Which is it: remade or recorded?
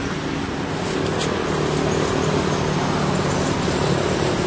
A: recorded